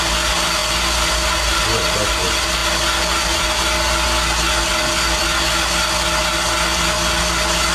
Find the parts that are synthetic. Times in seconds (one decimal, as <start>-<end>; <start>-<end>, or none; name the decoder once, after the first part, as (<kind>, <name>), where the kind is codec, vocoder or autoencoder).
none